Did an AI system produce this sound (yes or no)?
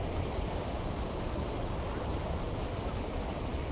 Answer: no